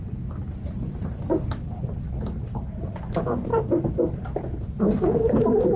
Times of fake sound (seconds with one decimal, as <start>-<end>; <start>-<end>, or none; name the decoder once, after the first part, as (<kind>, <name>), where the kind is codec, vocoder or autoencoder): none